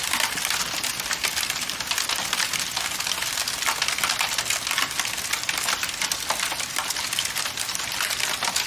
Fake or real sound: real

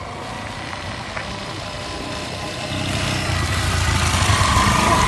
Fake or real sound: real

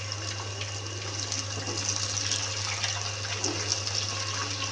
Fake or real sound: real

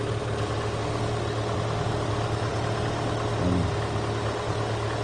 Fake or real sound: real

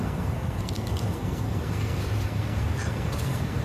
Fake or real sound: fake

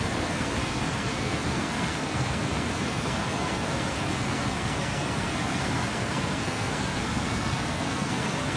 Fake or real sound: fake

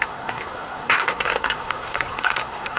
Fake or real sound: fake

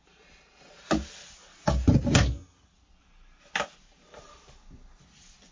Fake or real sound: real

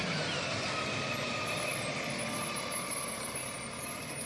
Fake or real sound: real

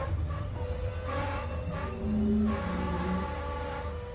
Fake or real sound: real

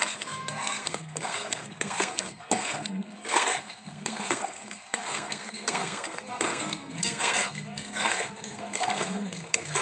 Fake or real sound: fake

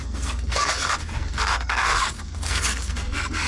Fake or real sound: fake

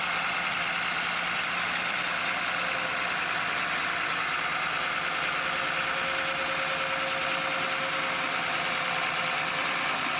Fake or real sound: real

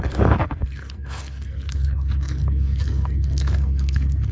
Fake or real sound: fake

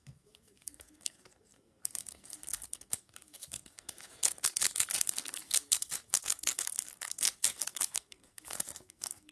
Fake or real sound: fake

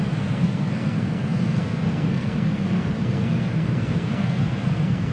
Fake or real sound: fake